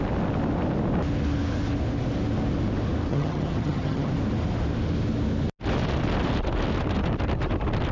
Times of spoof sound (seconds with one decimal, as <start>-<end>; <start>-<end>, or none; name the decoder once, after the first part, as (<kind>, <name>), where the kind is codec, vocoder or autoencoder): 3.1-4.1 (vocoder, HiFi-GAN)